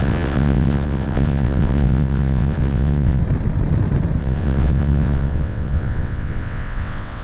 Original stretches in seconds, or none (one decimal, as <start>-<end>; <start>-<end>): 3.2-4.2